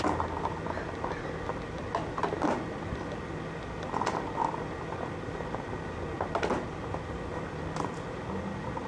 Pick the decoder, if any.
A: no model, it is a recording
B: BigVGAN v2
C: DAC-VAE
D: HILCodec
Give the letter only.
A